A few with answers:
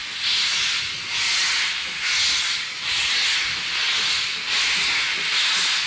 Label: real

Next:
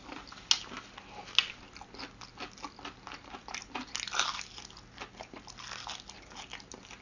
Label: real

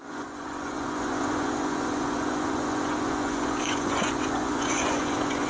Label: fake